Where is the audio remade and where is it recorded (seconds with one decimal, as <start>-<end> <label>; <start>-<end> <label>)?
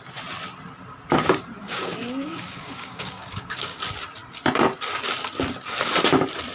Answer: 0.0-1.6 recorded; 1.6-3.8 remade; 3.8-6.5 recorded